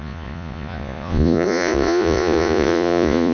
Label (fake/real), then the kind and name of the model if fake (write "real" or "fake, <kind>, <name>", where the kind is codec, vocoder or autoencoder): fake, vocoder, Vocos